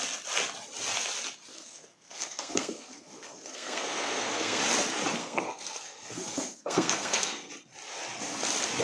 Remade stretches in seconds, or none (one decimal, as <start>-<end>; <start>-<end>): 1.5-4.6; 5.2-7.5